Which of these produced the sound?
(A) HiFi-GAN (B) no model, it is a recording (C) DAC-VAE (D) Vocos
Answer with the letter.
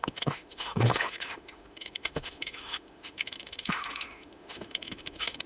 C